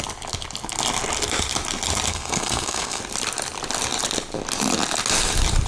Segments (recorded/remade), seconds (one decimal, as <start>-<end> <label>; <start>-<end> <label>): 0.0-2.1 recorded; 2.1-3.0 remade; 3.0-5.7 recorded